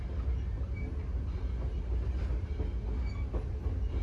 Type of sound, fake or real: real